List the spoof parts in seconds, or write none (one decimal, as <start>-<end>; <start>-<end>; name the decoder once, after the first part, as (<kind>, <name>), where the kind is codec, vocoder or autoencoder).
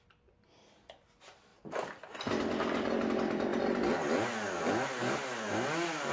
none